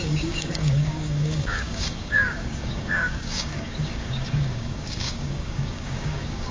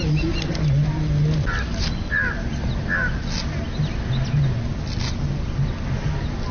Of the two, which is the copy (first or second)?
first